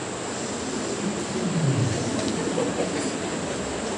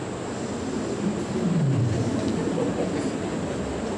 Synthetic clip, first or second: first